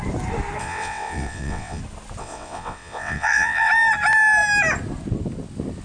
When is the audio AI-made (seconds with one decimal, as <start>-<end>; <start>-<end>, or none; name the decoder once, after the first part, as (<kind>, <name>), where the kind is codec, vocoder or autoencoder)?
0.6-1.8 (vocoder, WaveNeXt); 2.2-3.7